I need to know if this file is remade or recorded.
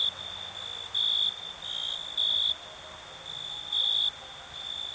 recorded